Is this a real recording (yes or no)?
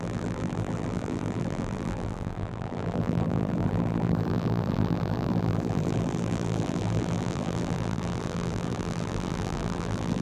no